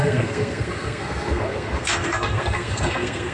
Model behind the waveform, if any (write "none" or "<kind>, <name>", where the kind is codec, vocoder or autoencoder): codec, SNAC